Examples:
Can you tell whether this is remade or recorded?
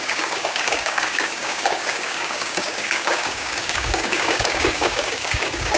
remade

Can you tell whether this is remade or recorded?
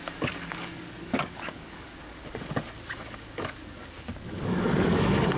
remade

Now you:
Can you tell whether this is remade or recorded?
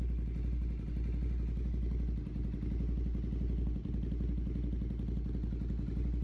recorded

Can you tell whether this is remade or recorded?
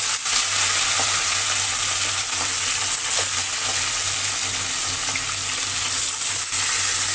recorded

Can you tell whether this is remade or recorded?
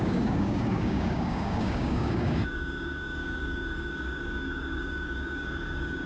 remade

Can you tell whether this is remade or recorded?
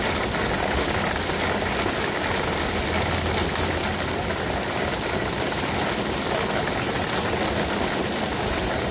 recorded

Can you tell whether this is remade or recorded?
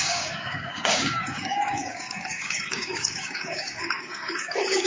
remade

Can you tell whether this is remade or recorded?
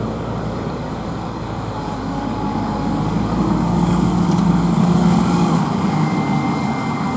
remade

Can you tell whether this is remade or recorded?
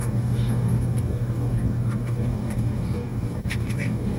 remade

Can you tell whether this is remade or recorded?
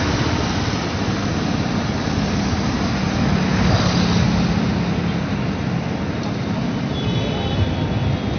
recorded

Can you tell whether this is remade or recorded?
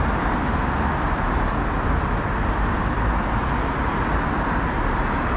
recorded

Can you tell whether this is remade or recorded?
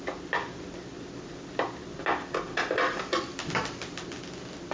recorded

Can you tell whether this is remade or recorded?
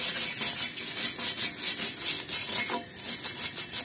recorded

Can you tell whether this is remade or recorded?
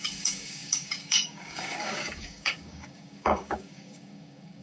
remade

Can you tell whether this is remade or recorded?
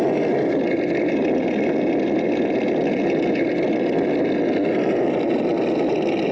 recorded